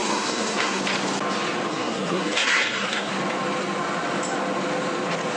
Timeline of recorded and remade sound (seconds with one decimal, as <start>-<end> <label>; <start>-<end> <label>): 0.0-0.8 remade; 0.8-1.7 recorded; 1.7-3.1 remade; 3.1-5.4 recorded